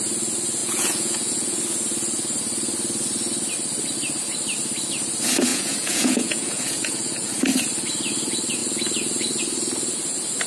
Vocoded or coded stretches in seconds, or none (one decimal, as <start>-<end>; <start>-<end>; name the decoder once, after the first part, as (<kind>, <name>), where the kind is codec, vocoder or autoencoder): 0.6-1.6 (vocoder, Vocos); 5.5-7.3